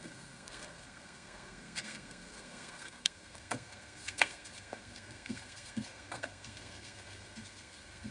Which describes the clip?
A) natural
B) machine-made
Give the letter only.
B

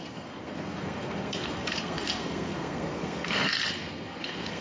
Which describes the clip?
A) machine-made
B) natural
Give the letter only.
A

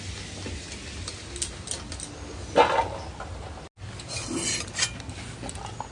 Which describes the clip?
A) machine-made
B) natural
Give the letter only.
B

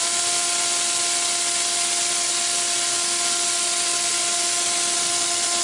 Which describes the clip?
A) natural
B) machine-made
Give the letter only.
A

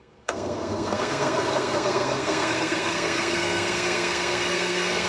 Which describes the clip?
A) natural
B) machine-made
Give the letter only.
B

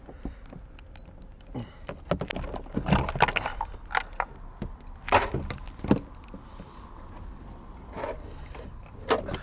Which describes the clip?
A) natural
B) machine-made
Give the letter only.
A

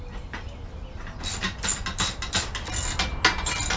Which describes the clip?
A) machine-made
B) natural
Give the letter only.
B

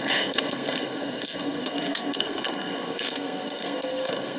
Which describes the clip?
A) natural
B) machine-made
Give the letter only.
B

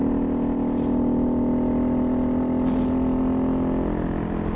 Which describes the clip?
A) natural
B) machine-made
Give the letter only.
A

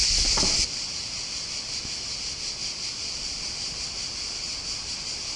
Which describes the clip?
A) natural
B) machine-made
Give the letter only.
A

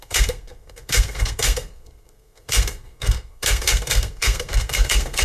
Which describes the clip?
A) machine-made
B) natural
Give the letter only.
A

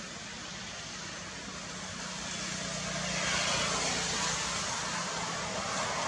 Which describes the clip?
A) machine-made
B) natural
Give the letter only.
B